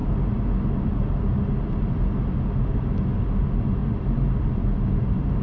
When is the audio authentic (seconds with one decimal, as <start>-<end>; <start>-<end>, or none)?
0.0-3.8; 4.6-5.4

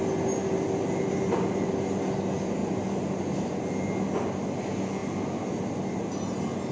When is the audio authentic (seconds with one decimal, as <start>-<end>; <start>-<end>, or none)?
0.0-6.7

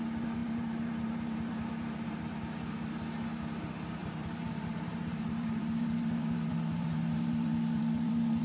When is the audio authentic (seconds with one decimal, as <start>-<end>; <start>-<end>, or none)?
0.0-0.4; 2.9-4.0

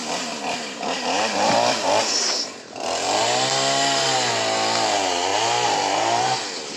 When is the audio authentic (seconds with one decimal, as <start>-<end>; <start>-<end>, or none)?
3.2-6.8

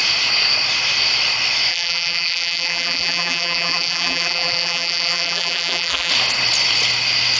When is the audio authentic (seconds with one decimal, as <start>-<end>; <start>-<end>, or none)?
0.0-1.7; 6.1-7.4

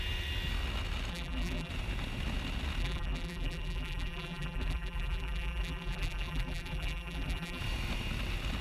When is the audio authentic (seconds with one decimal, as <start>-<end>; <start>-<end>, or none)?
0.0-1.1; 1.7-2.8; 7.6-8.6

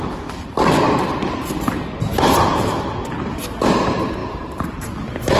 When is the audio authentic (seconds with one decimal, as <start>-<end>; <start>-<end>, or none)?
0.0-2.0; 2.9-4.2; 4.9-5.4